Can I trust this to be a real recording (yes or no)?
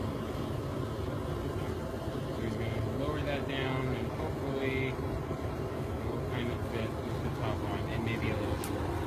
yes